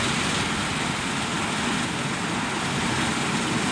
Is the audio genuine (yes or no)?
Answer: yes